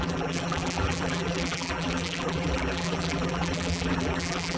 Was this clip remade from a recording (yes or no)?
yes